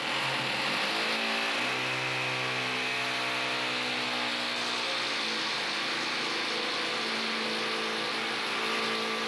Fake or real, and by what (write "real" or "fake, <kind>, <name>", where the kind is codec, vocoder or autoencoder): real